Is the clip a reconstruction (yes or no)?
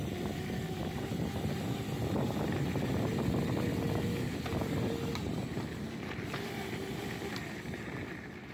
no